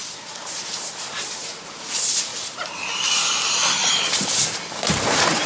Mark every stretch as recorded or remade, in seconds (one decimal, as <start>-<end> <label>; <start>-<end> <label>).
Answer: 0.0-5.5 recorded

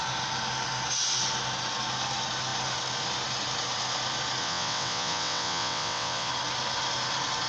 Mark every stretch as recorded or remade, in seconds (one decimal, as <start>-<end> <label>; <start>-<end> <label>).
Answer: 0.0-4.4 recorded; 4.4-6.3 remade; 6.3-7.5 recorded

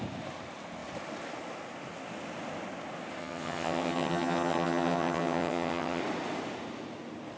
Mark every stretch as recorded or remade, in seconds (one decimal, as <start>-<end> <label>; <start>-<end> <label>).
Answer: 0.0-3.2 recorded; 3.2-6.0 remade; 6.0-7.4 recorded

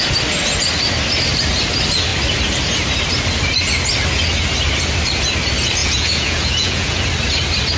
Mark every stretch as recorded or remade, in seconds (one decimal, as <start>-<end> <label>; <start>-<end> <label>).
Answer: 0.0-5.8 recorded; 5.8-7.0 remade; 7.0-7.8 recorded

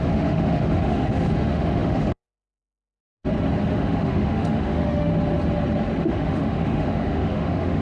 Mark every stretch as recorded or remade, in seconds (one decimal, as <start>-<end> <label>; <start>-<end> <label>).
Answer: 0.0-3.0 remade; 3.0-3.7 recorded; 3.7-5.1 remade; 5.1-6.0 recorded; 6.0-7.8 remade

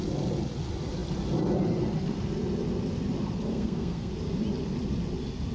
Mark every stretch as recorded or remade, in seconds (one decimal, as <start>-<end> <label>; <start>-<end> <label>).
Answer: 0.0-3.5 recorded; 3.5-4.1 remade; 4.1-5.5 recorded

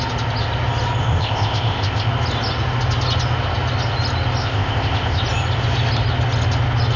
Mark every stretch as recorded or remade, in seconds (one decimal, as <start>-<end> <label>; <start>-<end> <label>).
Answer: 0.0-1.0 recorded; 1.0-2.1 remade; 2.1-4.4 recorded; 4.4-5.2 remade; 5.2-7.0 recorded

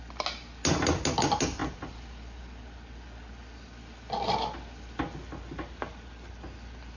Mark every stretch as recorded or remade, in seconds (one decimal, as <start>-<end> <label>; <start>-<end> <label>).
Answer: 0.0-7.0 recorded